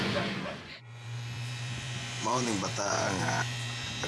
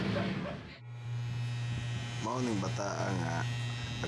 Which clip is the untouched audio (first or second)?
second